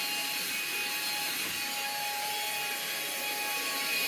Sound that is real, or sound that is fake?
fake